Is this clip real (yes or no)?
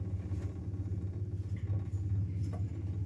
yes